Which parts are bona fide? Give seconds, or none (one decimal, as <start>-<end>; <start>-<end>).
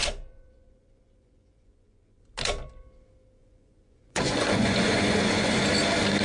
2.2-3.4; 5.6-6.2